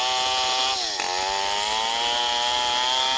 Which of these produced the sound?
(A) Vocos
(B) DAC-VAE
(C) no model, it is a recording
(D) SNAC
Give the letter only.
C